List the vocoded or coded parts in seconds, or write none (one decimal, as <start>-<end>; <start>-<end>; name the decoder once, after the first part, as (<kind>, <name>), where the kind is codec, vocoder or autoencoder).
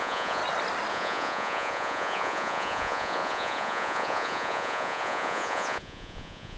0.0-0.4 (vocoder, Vocos); 0.9-6.6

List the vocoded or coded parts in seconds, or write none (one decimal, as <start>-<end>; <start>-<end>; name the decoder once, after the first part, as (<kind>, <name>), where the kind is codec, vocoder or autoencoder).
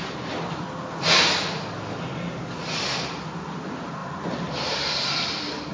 none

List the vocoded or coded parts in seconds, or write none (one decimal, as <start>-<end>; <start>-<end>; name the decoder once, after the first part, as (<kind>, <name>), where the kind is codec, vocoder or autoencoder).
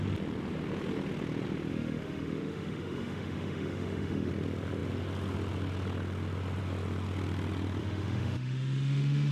1.7-4.3 (autoencoder, DAC-VAE); 7.8-9.3